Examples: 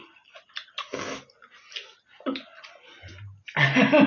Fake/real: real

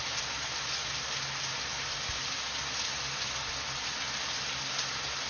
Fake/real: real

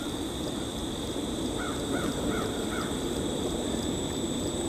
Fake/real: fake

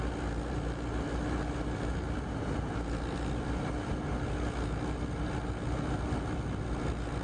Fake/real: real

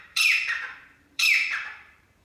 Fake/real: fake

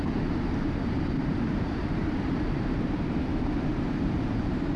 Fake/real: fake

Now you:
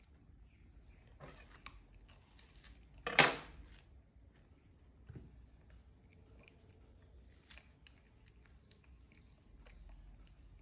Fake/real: real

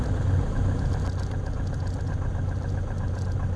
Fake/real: real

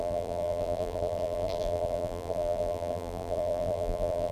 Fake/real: fake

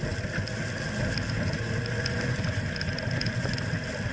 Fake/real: real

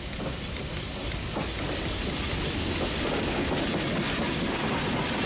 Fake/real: real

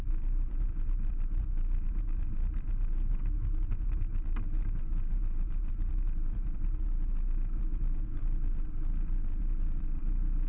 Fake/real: fake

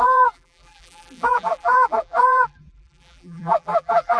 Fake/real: fake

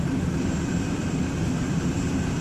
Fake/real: fake